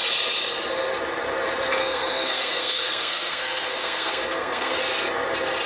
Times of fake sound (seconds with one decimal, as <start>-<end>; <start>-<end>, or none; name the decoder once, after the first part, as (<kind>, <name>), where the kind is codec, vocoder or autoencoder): 1.8-4.8 (codec, SNAC)